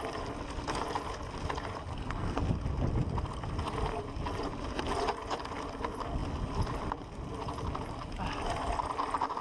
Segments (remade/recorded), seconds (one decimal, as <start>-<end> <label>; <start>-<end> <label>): 0.0-1.9 recorded; 1.9-2.5 remade; 2.5-9.4 recorded